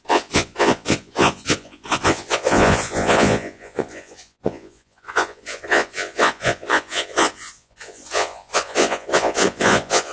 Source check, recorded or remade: remade